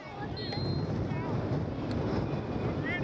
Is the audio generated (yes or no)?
no